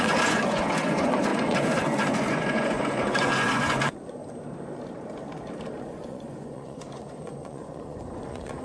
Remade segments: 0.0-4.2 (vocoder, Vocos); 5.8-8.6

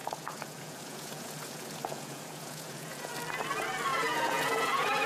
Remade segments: 0.0-3.1 (vocoder, Vocos); 3.9-5.1

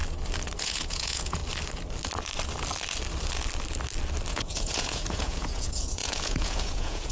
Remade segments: 0.6-1.4 (vocoder, Vocos); 4.3-7.1

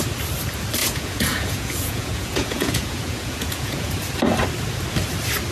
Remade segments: 0.8-3.9 (vocoder, Vocos)

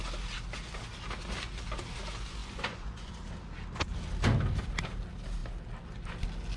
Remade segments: 2.4-3.1 (vocoder, Vocos)

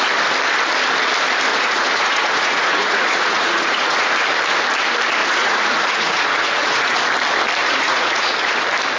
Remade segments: 1.5-4.1 (vocoder, Vocos); 5.2-6.9; 7.6-8.5

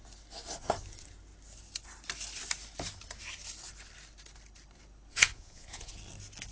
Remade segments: 5.1-5.9 (vocoder, Vocos)

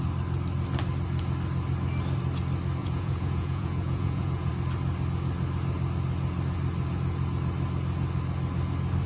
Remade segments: 2.8-4.5 (vocoder, Vocos)